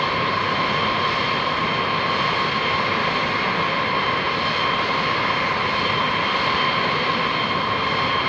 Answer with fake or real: real